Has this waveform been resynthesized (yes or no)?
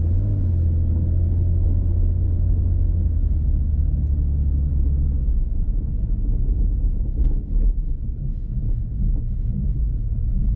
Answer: no